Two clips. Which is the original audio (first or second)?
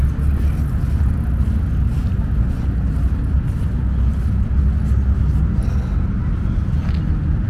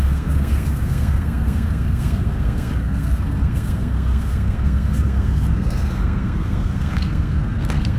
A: first